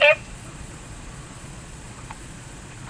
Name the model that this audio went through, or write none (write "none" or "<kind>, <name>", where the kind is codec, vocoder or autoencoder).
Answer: vocoder, Vocos